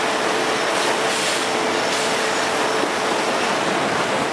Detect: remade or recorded recorded